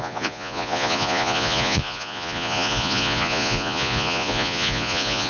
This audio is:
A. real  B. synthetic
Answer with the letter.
B